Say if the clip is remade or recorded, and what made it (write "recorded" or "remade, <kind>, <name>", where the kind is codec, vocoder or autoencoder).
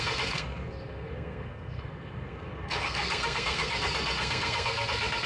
remade, codec, SNAC